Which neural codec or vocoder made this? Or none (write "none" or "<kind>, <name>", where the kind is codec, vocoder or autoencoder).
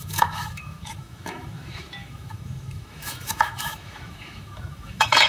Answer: autoencoder, DAC-VAE